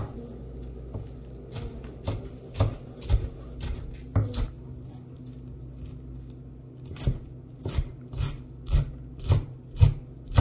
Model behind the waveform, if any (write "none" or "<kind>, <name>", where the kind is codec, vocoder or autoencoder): none